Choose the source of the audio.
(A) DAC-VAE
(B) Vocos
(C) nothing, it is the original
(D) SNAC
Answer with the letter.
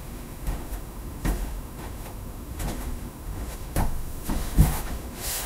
A